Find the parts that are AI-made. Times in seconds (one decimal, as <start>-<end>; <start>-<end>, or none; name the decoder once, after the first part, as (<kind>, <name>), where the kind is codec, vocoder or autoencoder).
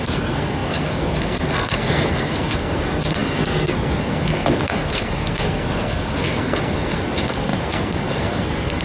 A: 0.0-8.8 (codec, SNAC)